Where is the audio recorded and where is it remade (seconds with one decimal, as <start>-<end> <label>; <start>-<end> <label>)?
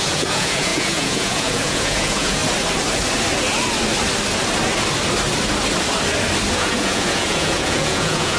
0.0-2.4 remade; 2.4-6.5 recorded; 6.5-8.4 remade